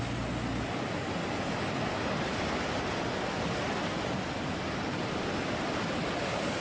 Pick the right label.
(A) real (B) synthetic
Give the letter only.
A